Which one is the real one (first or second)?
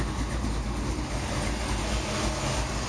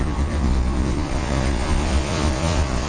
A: first